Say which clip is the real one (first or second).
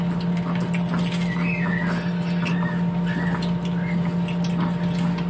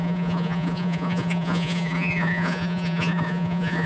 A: first